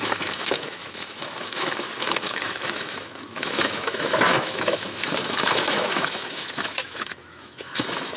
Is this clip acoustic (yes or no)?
no